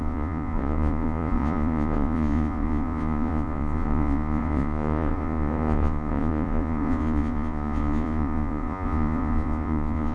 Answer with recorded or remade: remade